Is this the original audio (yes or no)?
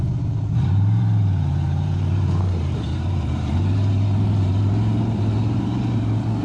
no